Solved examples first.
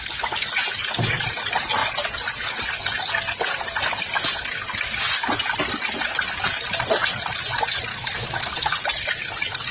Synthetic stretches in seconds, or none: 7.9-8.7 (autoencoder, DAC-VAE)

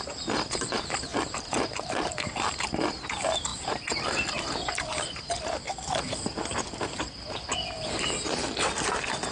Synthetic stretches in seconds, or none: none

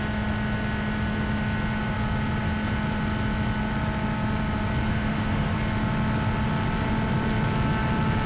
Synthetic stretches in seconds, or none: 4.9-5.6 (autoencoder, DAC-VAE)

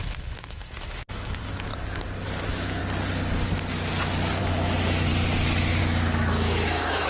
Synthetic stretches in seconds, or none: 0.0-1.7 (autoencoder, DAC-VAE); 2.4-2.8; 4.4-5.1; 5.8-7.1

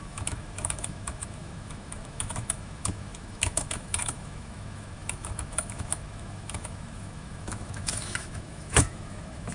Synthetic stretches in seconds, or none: 0.0-9.5 (autoencoder, DAC-VAE)

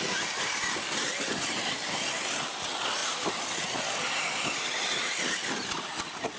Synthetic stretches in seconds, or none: none

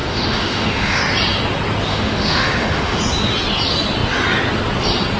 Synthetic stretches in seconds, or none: 0.0-1.0 (autoencoder, DAC-VAE); 1.9-3.0

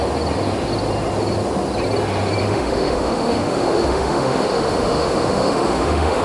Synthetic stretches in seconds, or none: 2.4-6.2 (autoencoder, DAC-VAE)